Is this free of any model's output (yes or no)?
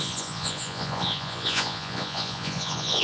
no